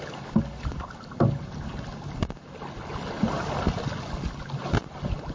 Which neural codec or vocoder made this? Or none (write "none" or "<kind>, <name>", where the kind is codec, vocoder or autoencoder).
none